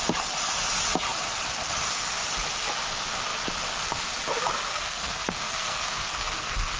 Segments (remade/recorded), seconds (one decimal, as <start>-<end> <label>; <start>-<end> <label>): 0.0-4.7 recorded; 4.7-6.8 remade